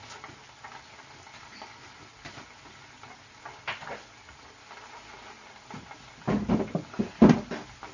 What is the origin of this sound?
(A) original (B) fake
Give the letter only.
A